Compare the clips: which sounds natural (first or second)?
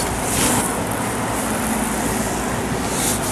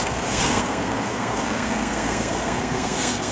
first